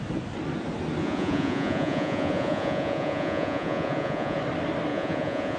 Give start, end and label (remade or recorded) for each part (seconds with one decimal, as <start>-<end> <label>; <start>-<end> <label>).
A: 0.0-1.0 recorded; 1.0-4.4 remade; 4.4-4.9 recorded; 4.9-5.6 remade